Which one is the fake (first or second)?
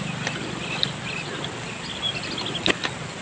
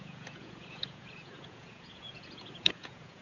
second